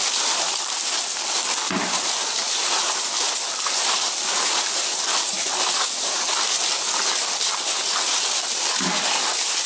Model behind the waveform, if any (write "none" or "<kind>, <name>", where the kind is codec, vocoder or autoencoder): none